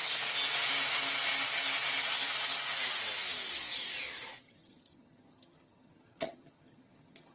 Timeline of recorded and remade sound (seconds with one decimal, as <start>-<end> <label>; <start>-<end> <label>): 0.0-4.4 recorded; 4.4-7.3 remade